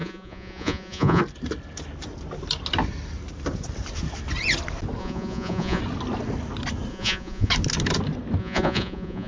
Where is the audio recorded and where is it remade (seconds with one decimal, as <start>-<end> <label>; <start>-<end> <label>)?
0.0-1.2 remade; 1.2-5.0 recorded; 5.0-5.8 remade; 5.8-6.9 recorded; 6.9-7.5 remade; 7.5-8.4 recorded; 8.4-9.3 remade